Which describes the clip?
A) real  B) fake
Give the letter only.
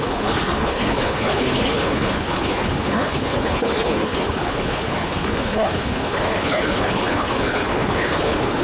B